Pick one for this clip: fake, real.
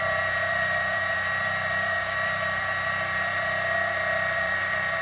fake